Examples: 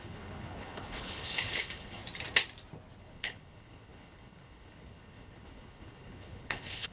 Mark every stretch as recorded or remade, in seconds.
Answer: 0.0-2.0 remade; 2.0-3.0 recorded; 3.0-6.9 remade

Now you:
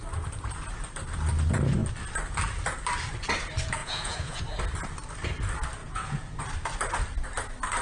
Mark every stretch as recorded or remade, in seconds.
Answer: 0.0-3.8 recorded; 3.8-4.4 remade; 4.4-5.8 recorded; 5.8-6.4 remade; 6.4-7.8 recorded

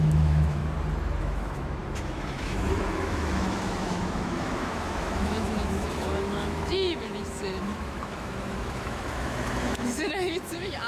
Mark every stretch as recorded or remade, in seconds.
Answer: 0.0-0.6 remade; 0.6-1.2 recorded; 1.2-10.9 remade